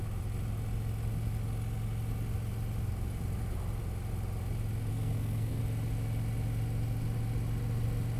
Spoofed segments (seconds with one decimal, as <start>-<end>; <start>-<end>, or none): 4.9-5.6